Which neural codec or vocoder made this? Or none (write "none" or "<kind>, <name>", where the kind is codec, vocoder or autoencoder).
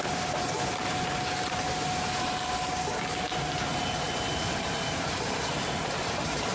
none